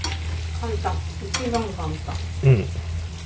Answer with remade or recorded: recorded